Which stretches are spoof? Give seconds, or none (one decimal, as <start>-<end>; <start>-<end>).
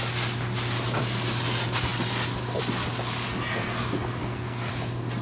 4.2-4.7